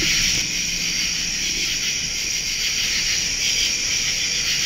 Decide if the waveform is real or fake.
real